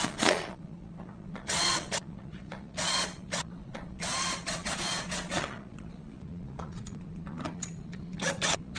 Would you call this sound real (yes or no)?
no